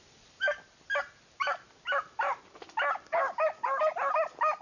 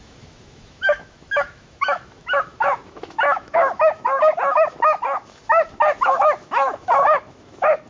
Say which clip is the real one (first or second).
first